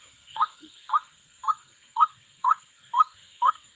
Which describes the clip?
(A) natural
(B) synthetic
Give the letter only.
B